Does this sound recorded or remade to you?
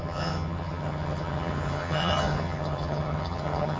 remade